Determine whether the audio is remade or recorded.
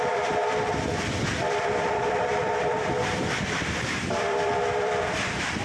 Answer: remade